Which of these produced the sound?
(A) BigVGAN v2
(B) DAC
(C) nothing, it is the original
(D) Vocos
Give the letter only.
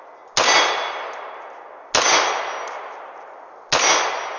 C